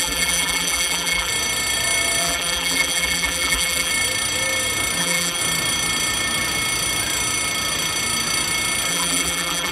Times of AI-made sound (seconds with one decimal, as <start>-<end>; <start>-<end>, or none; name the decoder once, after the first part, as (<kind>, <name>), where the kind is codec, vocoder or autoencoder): 0.0-1.3 (vocoder, BigVGAN v2); 2.2-3.9; 5.0-5.4; 8.9-9.7

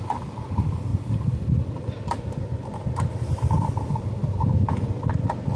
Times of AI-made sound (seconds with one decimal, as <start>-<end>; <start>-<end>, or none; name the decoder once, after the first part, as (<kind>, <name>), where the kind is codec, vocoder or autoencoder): 0.0-4.2 (vocoder, BigVGAN v2); 5.1-5.6

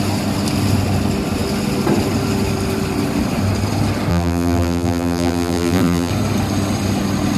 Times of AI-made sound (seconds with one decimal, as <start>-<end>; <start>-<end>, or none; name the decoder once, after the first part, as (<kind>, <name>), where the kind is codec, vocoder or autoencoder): 4.1-6.1 (vocoder, BigVGAN v2)

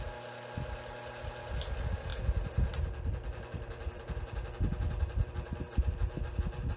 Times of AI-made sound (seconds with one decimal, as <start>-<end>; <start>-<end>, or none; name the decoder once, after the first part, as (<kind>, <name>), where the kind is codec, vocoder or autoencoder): none